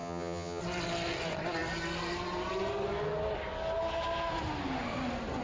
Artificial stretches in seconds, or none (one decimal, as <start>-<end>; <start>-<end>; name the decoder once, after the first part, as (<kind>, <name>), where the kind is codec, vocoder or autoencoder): 0.0-0.6 (vocoder, HiFi-GAN)